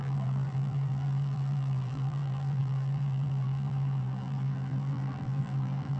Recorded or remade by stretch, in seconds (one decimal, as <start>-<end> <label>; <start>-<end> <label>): 0.0-6.0 remade

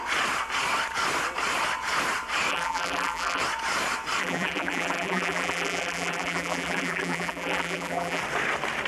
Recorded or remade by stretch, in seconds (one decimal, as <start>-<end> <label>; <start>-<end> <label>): 0.0-2.5 recorded; 2.5-3.4 remade; 3.4-4.2 recorded; 4.2-8.2 remade; 8.2-8.9 recorded

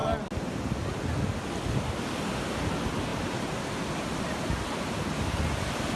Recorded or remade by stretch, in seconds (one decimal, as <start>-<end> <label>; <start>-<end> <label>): 0.0-6.0 recorded

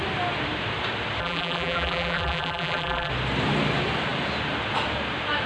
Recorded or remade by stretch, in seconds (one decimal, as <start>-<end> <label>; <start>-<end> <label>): 0.0-1.2 recorded; 1.2-3.1 remade; 3.1-5.5 recorded

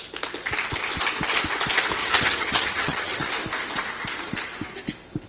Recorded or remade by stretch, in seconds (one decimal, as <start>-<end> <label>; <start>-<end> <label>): 0.0-2.0 recorded; 2.0-3.3 remade; 3.3-5.3 recorded

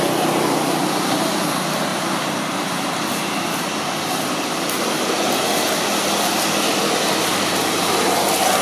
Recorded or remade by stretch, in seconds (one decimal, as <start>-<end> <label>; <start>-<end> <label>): 0.0-1.9 recorded; 1.9-5.1 remade; 5.1-8.6 recorded

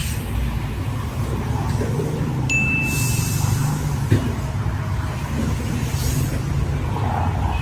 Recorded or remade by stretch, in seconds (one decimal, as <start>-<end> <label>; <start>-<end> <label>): 0.0-7.6 recorded

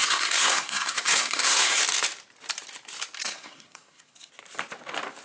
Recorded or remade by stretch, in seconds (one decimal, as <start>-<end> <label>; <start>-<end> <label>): 0.0-1.8 remade; 1.8-3.2 recorded; 3.2-4.3 remade; 4.3-5.2 recorded